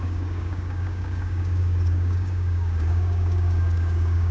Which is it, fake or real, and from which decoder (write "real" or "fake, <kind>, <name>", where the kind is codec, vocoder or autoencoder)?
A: fake, codec, DAC